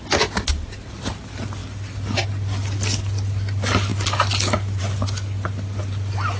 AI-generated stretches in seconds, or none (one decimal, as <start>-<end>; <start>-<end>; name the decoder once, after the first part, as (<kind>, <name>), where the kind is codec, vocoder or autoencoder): none